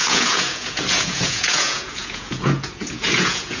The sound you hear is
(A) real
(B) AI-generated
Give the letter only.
B